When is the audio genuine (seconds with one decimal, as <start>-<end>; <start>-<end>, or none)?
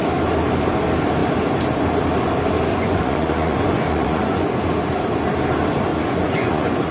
0.0-2.7; 4.5-5.9